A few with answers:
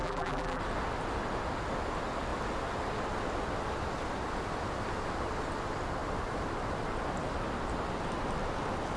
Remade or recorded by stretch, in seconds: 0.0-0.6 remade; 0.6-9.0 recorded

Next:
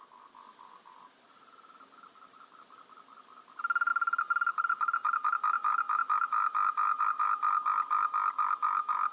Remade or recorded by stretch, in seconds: 0.0-9.1 recorded

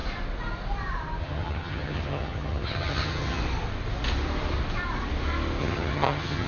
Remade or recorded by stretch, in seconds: 0.0-1.2 recorded; 1.2-3.4 remade; 3.4-5.6 recorded; 5.6-6.5 remade

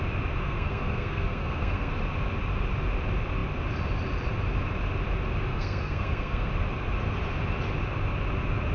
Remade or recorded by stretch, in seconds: 0.0-0.4 recorded; 0.4-1.9 remade; 1.9-5.5 recorded; 5.5-6.5 remade; 6.5-8.7 recorded